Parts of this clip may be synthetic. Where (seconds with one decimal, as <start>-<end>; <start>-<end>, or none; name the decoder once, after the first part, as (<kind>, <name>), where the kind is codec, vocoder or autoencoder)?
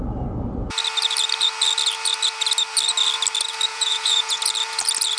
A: 3.7-4.4 (vocoder, Vocos)